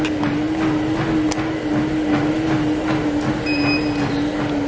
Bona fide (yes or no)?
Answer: yes